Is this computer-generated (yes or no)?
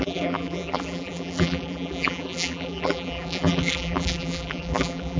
yes